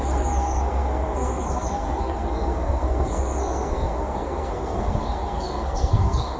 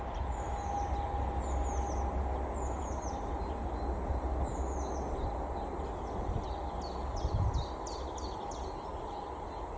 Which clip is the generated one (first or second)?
first